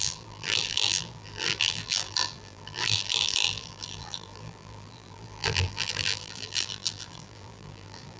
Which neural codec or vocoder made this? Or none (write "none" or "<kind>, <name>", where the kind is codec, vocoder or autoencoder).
vocoder, BigVGAN v2